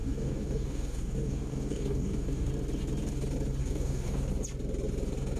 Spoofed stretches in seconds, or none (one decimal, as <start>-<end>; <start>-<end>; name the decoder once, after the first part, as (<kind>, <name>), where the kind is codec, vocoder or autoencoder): 0.0-2.5 (codec, DAC); 3.6-4.3